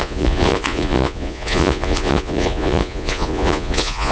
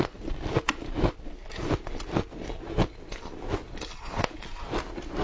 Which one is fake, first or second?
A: first